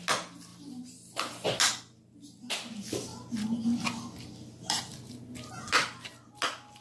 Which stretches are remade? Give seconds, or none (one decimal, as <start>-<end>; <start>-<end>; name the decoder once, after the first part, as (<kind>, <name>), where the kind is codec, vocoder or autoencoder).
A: none